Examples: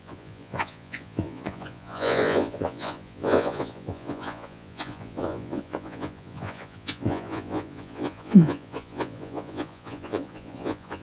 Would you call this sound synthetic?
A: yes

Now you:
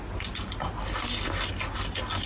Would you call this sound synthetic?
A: no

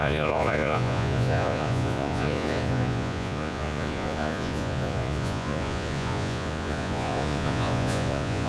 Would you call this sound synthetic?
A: yes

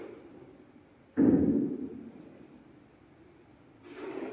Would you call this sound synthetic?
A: no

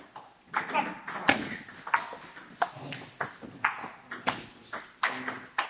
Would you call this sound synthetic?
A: no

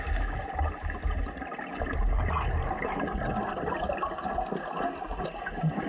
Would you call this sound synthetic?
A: no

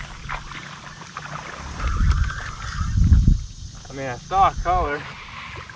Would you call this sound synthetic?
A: no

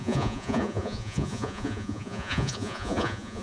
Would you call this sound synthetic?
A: yes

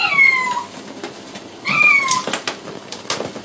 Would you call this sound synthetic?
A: no